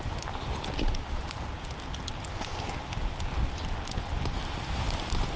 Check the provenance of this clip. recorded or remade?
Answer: recorded